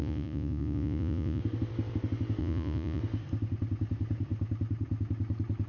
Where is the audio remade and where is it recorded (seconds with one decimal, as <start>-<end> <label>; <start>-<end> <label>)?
0.0-1.4 remade; 1.4-2.4 recorded; 2.4-3.0 remade; 3.0-5.7 recorded